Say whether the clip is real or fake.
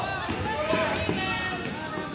real